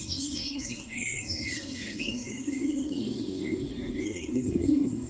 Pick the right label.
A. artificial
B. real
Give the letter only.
A